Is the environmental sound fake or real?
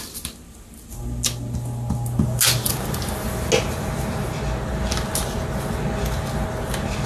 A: real